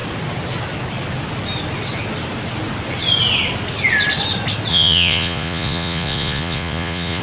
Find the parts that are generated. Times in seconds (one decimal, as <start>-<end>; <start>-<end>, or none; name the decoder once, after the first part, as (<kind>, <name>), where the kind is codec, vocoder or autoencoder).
4.7-7.2 (vocoder, Vocos)